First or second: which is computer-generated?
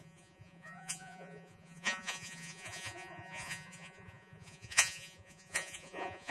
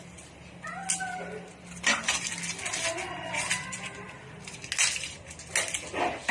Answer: first